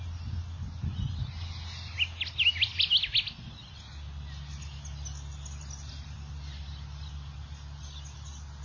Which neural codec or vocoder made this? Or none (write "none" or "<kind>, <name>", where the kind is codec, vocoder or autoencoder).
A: none